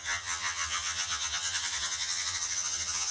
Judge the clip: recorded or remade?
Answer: remade